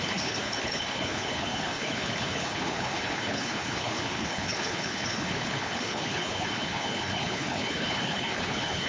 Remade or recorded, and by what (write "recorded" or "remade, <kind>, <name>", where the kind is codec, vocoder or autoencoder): remade, codec, HILCodec